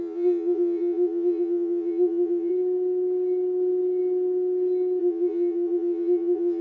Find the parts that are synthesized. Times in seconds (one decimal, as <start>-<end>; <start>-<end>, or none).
0.0-2.5; 5.0-6.6